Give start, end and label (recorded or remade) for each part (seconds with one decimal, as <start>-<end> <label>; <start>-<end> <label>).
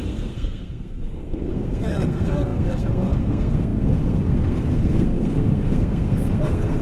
0.0-6.8 remade